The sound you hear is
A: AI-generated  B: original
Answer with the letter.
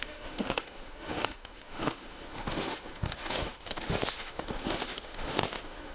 A